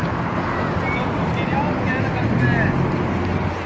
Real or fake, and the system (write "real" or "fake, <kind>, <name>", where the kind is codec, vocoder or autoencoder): real